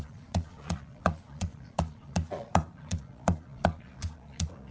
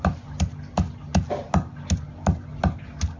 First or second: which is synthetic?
first